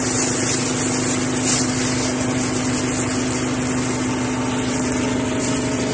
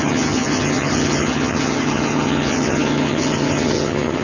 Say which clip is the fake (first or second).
second